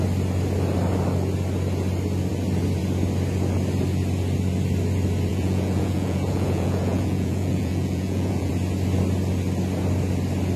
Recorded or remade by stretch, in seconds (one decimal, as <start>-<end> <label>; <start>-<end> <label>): 0.0-5.3 recorded; 5.3-8.5 remade; 8.5-10.6 recorded